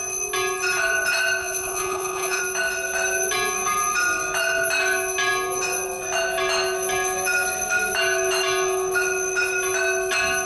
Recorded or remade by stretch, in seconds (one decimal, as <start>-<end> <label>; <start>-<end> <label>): 0.0-1.4 recorded; 1.4-2.4 remade; 2.4-10.5 recorded